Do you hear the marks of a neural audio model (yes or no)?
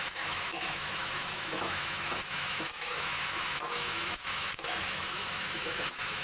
yes